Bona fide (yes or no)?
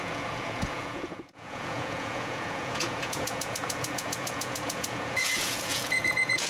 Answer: no